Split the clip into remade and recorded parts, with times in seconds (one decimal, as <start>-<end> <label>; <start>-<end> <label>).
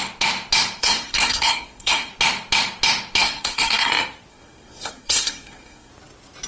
0.0-0.8 recorded; 0.8-2.1 remade; 2.1-3.2 recorded; 3.2-3.9 remade; 3.9-4.3 recorded; 4.3-5.9 remade; 5.9-6.5 recorded